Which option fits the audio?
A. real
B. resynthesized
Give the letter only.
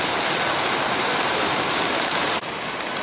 A